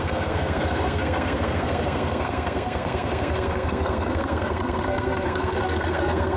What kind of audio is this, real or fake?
fake